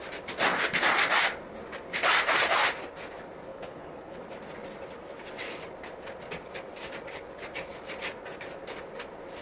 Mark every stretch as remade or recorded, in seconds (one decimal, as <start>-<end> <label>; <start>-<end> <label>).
0.0-3.5 recorded; 3.5-4.2 remade; 4.2-9.4 recorded